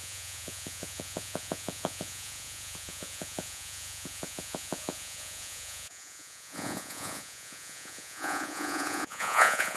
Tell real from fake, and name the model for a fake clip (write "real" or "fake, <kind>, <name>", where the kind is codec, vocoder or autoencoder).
fake, vocoder, Vocos